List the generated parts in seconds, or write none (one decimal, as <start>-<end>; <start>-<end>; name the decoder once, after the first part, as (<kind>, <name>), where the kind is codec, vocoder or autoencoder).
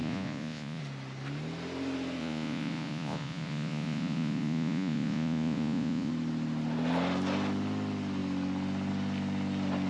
0.0-0.8 (vocoder, Vocos); 2.2-6.1